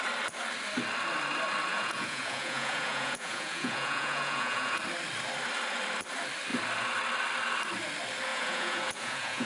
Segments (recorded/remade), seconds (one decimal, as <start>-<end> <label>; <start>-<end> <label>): 0.0-1.7 recorded; 1.7-4.8 remade; 4.8-8.3 recorded; 8.3-9.5 remade